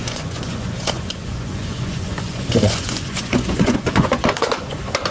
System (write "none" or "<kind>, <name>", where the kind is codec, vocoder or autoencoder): vocoder, Vocos